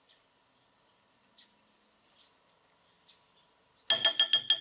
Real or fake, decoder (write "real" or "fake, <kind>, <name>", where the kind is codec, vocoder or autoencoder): real